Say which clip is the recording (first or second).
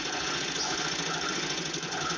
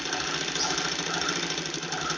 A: second